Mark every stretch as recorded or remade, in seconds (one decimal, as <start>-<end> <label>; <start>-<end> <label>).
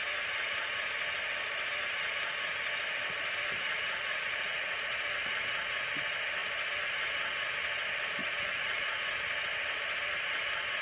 0.0-3.6 recorded; 3.6-5.1 remade; 5.1-8.2 recorded; 8.2-9.0 remade; 9.0-10.8 recorded